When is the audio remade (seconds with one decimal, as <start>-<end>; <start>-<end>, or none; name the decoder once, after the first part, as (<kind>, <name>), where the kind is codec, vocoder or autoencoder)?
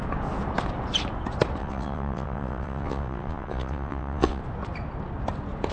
1.6-4.4 (vocoder, WaveNeXt)